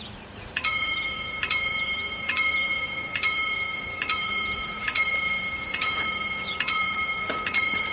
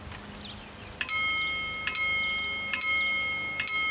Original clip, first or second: second